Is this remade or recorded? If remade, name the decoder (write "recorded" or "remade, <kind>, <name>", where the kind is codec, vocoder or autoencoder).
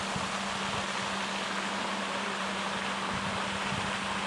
recorded